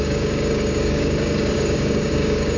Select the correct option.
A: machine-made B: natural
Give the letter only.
A